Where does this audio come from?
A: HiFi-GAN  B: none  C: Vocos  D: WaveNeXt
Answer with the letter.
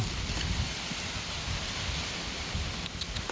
B